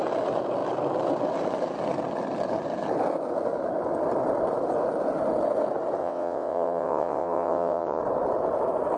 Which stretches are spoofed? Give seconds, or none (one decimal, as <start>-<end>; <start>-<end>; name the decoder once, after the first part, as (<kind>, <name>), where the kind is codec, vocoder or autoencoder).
6.0-8.0 (vocoder, WaveNeXt)